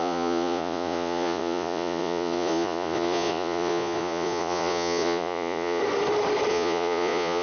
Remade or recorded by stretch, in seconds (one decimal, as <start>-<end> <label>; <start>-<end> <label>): 0.0-5.8 remade; 5.8-6.5 recorded; 6.5-7.4 remade